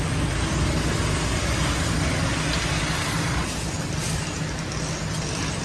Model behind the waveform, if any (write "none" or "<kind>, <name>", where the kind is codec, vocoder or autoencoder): none